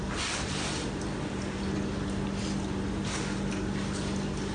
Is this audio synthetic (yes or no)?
no